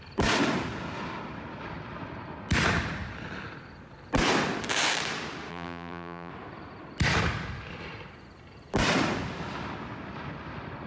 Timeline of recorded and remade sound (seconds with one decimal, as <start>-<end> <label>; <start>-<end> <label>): 0.0-5.5 recorded; 5.5-6.3 remade; 6.3-10.9 recorded